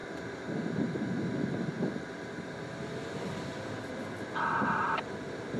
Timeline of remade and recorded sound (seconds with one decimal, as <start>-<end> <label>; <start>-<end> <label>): 0.0-5.6 remade